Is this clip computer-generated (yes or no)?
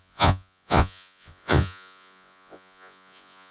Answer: yes